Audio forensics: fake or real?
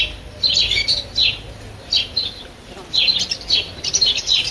fake